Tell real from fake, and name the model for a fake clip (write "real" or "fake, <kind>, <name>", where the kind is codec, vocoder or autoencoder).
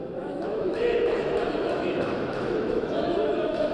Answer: fake, autoencoder, DAC-VAE